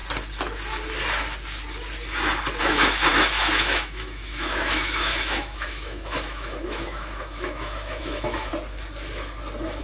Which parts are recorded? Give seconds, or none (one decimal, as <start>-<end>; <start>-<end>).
0.0-2.6; 8.5-9.8